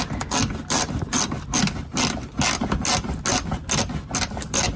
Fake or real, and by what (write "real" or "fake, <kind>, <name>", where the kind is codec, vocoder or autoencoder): real